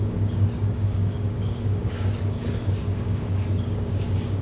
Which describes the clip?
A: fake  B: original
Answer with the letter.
A